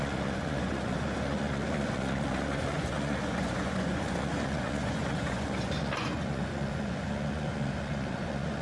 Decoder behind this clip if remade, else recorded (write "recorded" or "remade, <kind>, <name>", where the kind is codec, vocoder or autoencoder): remade, vocoder, Vocos